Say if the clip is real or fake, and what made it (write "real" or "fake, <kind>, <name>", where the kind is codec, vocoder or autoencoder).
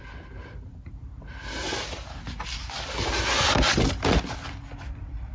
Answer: real